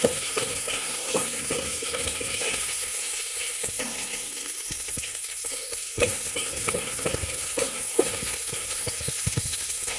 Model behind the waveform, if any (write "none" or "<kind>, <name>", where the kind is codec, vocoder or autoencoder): codec, SNAC